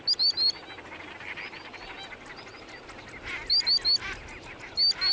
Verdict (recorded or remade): recorded